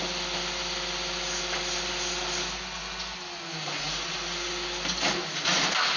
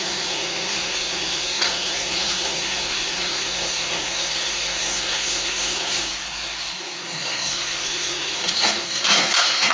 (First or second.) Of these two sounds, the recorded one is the first